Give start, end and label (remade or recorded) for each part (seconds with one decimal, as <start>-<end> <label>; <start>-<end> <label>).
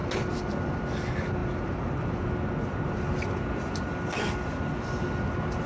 0.0-5.7 recorded